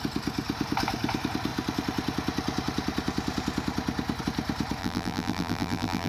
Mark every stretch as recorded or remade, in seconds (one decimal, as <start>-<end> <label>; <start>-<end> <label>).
0.0-4.8 recorded; 4.8-6.1 remade